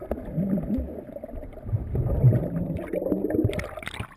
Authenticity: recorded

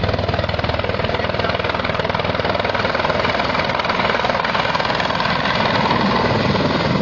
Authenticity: recorded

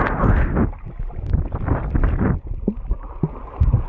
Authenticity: recorded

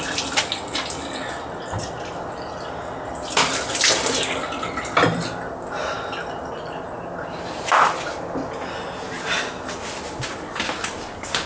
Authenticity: recorded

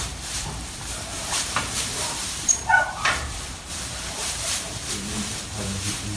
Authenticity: remade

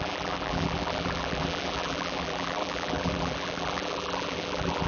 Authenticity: remade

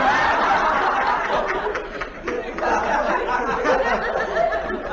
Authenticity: recorded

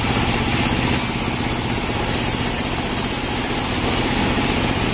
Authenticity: recorded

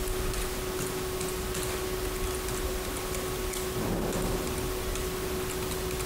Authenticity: recorded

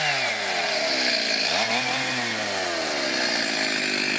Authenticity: recorded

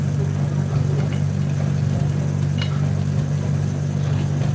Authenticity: recorded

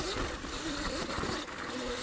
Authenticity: remade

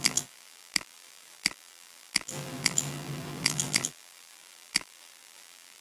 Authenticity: remade